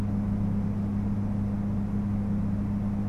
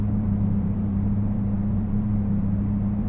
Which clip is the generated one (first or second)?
second